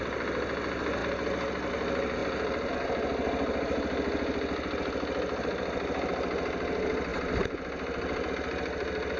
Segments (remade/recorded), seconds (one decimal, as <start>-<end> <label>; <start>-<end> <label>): 0.0-2.2 recorded; 2.2-2.7 remade; 2.7-9.2 recorded